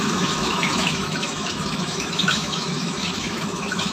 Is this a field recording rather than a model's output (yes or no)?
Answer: no